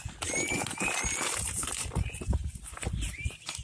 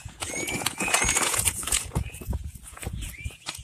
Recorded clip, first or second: first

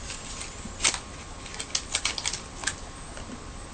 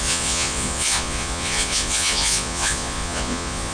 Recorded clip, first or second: first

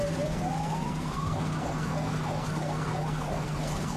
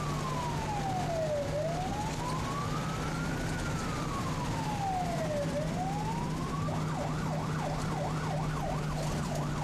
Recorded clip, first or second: second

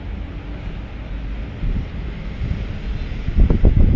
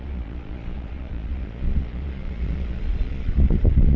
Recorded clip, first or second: first